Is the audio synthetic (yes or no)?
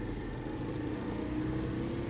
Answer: no